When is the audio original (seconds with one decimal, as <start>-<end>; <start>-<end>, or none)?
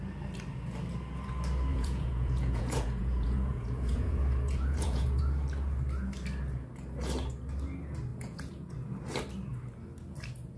0.0-1.7; 5.2-8.1; 8.7-10.6